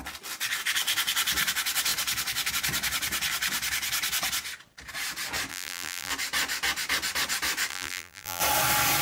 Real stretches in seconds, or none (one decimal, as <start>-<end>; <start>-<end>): 0.0-5.5; 6.1-7.7; 8.4-9.0